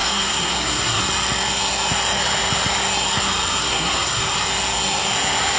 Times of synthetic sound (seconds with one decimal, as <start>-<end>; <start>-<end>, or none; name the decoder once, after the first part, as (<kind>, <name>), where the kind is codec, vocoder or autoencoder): 0.0-1.0 (codec, SNAC); 3.6-4.2